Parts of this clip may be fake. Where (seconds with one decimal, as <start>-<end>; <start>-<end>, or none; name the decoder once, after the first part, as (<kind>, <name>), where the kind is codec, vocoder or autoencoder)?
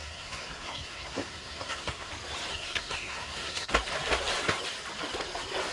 0.0-2.1 (codec, SNAC); 2.5-3.7